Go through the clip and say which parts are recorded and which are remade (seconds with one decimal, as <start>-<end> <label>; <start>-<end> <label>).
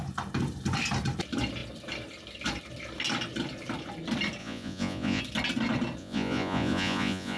0.0-4.4 recorded; 4.4-5.2 remade; 5.2-6.0 recorded; 6.0-7.4 remade